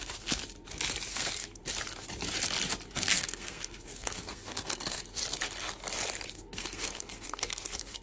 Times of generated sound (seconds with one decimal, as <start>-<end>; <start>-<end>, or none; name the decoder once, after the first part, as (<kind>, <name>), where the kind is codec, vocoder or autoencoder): 0.0-0.4 (codec, SNAC); 1.1-1.6; 2.9-5.2; 6.3-8.0